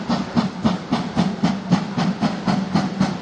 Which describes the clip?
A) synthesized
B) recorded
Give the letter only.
B